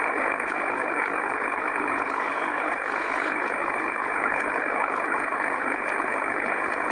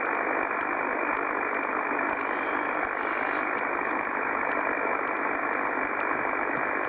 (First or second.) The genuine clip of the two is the second